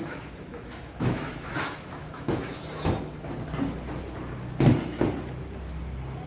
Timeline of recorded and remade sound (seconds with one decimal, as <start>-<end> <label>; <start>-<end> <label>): 0.0-2.9 remade; 2.9-6.3 recorded